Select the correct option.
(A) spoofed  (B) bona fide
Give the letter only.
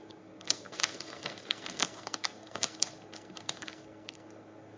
A